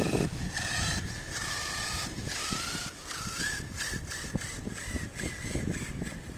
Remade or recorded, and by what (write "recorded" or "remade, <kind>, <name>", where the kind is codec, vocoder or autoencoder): recorded